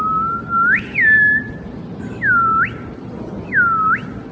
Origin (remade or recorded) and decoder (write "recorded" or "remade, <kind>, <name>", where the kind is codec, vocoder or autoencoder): recorded